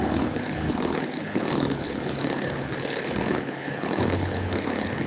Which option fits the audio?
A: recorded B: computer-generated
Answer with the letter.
B